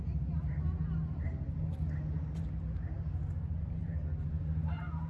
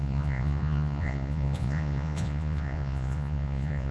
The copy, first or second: second